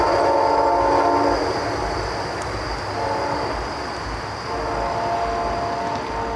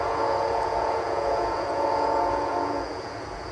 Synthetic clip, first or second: second